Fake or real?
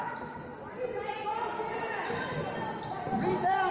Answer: fake